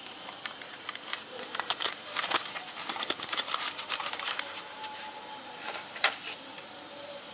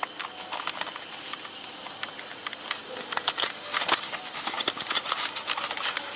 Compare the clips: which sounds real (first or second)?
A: second